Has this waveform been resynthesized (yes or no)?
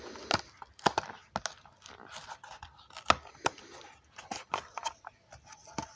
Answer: no